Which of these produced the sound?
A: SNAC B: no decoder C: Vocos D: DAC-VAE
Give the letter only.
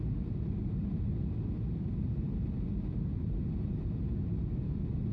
B